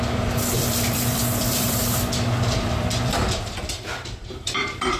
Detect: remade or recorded remade